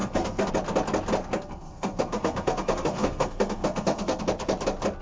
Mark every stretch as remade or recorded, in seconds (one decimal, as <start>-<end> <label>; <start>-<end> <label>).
0.0-0.5 remade; 0.5-1.2 recorded; 1.2-4.2 remade; 4.2-5.0 recorded